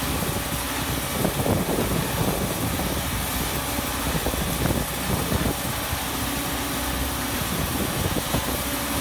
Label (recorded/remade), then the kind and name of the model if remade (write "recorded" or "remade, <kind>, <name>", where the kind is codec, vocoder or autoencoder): recorded